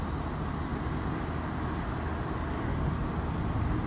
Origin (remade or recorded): recorded